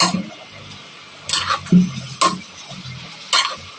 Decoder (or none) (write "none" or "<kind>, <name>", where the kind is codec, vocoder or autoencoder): none